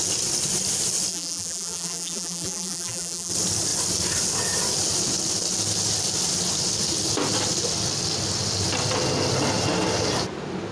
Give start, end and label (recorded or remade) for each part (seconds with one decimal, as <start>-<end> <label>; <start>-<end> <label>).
0.0-1.1 recorded; 1.1-3.3 remade; 3.3-10.7 recorded

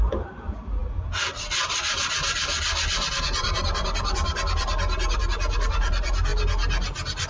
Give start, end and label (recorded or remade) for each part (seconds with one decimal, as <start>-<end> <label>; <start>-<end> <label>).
0.0-6.3 remade; 6.3-7.3 recorded

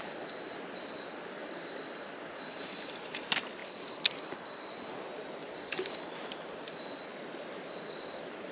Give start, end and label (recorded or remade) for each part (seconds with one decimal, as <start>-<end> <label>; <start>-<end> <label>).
0.0-1.4 recorded; 1.4-2.9 remade; 2.9-8.5 recorded

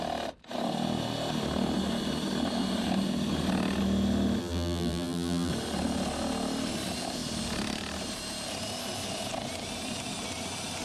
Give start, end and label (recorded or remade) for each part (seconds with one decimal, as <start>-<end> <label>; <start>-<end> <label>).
0.0-4.4 recorded; 4.4-5.5 remade; 5.5-10.8 recorded

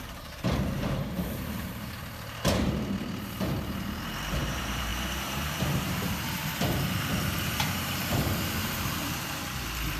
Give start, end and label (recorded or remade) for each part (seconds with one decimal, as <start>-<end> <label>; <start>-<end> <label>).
0.0-10.0 remade